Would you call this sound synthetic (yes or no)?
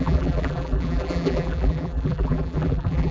yes